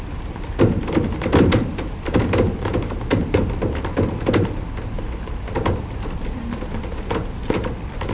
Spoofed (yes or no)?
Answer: no